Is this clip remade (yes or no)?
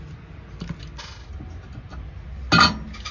no